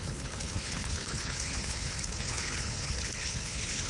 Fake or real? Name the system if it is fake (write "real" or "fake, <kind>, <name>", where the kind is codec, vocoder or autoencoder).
fake, codec, HILCodec